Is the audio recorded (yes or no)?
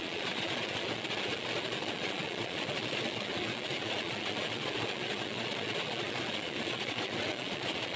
no